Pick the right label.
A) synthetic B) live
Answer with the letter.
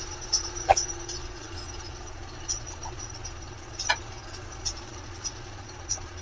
A